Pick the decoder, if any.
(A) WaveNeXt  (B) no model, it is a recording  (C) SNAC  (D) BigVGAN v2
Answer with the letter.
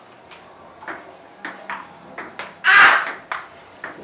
B